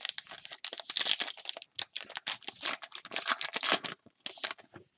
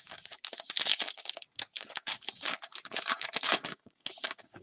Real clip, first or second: first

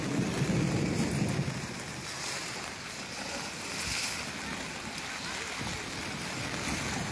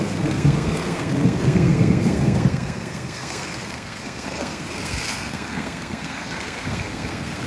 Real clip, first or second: first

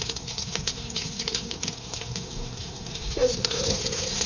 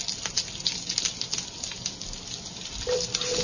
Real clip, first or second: second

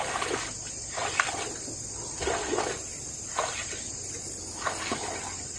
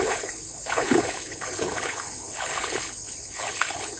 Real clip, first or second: first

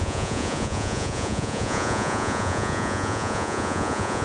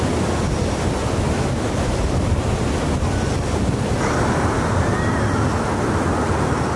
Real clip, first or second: second